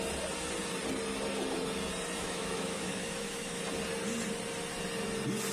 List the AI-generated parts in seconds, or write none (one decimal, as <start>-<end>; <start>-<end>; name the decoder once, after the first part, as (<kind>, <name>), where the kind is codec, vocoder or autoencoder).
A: 2.2-3.6 (autoencoder, DAC-VAE)